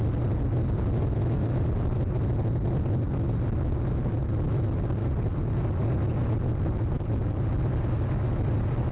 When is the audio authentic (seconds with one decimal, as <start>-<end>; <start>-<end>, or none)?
0.0-8.9

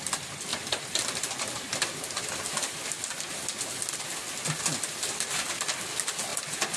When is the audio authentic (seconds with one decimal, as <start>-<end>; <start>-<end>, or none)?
0.0-6.8

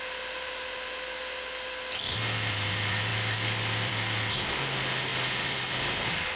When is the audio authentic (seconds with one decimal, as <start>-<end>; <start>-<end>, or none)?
0.0-3.1; 3.9-6.4

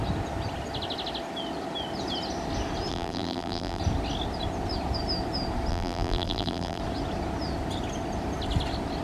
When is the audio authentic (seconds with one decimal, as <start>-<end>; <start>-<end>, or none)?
0.0-2.9; 3.8-5.7; 6.8-9.0

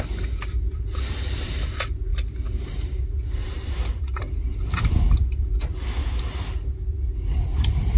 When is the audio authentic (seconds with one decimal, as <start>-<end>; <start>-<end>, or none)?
0.0-3.4; 4.2-8.0

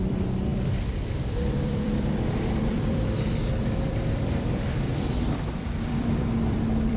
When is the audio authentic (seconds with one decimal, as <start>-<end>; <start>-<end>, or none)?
0.5-1.2

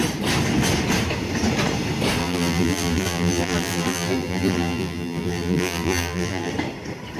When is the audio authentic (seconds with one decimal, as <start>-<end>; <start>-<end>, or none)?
0.0-2.2; 6.5-7.2